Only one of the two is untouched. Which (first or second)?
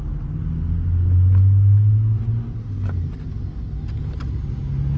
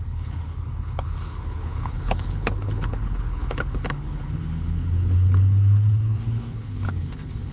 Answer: first